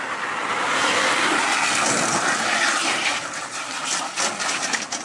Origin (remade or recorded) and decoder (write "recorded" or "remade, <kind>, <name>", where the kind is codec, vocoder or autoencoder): recorded